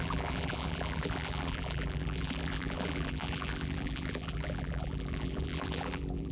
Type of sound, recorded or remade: remade